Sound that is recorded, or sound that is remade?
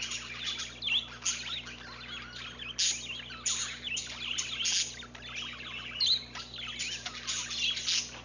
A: recorded